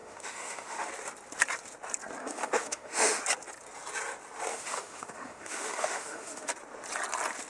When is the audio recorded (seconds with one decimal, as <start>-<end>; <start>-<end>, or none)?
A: 0.9-2.2; 3.2-4.5; 6.5-7.5